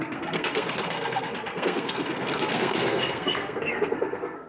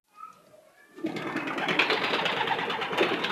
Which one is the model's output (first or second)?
first